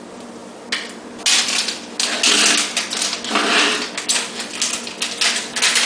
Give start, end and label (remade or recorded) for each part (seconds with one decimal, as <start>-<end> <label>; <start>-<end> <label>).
0.0-5.9 recorded